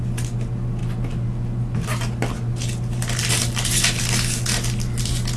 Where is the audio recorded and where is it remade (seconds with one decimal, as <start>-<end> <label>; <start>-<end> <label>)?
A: 0.0-5.4 recorded